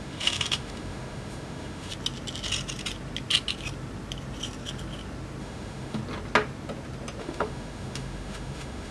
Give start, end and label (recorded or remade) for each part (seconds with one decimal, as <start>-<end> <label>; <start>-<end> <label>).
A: 0.0-1.9 remade; 1.9-5.4 recorded; 5.4-6.0 remade; 6.0-7.2 recorded; 7.2-8.9 remade